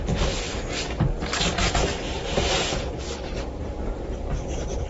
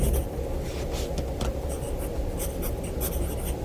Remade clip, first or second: first